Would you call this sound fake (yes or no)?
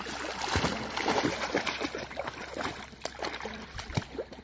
no